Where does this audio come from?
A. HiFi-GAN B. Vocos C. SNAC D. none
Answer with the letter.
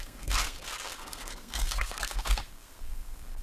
C